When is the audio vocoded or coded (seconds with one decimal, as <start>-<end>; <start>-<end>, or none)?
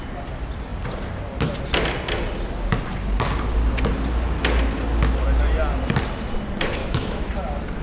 6.8-7.3